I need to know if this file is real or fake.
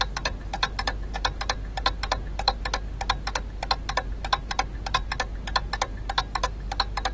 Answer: real